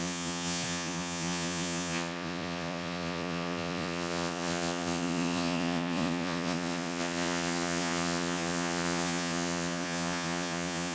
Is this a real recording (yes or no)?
no